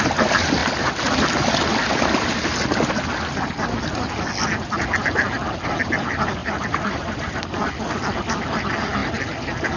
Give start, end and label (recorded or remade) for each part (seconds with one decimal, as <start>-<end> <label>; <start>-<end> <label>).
0.0-6.4 recorded; 6.4-7.7 remade; 7.7-9.8 recorded